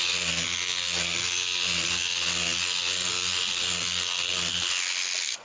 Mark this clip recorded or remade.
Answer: recorded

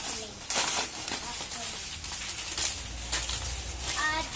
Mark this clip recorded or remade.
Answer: recorded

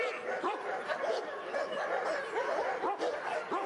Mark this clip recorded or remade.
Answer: recorded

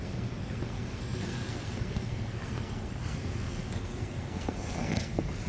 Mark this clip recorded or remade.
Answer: remade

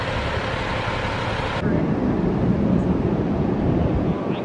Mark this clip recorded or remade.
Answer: recorded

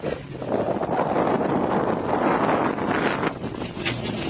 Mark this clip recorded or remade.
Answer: recorded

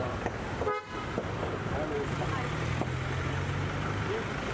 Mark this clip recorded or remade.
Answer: recorded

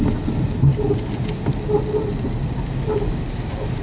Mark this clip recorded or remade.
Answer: recorded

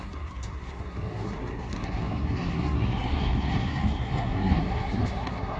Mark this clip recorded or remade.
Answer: remade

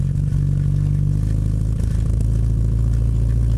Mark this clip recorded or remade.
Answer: recorded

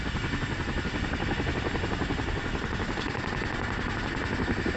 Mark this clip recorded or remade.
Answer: recorded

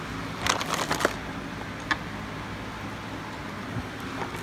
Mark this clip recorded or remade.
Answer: recorded